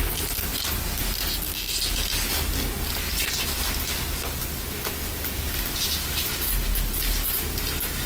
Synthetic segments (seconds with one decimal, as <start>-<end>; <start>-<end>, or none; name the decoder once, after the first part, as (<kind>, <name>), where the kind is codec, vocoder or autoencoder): none